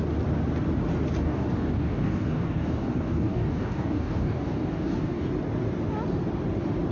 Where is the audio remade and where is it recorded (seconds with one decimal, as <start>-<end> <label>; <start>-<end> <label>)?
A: 0.0-1.2 recorded; 1.2-5.3 remade; 5.3-6.9 recorded